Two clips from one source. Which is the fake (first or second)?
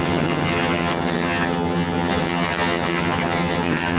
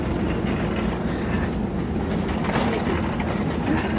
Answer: first